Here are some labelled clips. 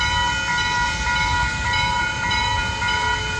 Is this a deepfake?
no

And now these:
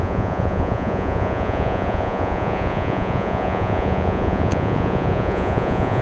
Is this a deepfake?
yes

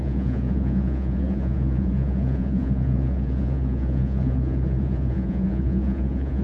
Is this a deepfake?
yes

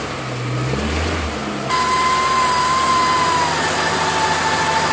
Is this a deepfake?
no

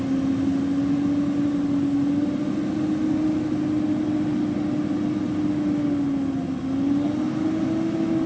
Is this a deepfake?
no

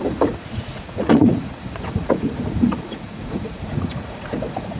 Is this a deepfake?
yes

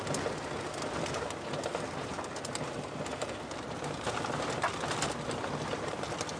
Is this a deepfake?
no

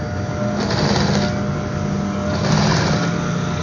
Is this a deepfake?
no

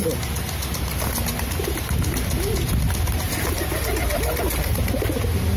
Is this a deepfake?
no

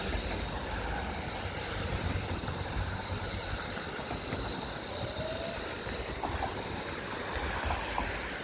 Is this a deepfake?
no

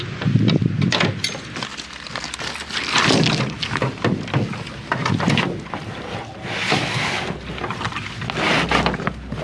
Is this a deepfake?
no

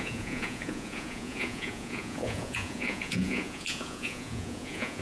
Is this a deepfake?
yes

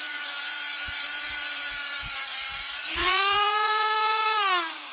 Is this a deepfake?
yes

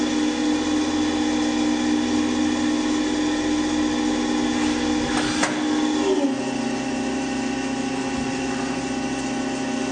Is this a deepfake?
no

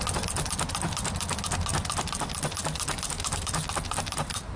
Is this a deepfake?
no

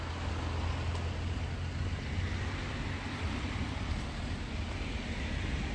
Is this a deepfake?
no